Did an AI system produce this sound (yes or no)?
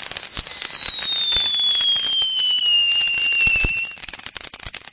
no